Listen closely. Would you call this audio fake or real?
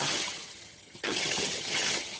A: fake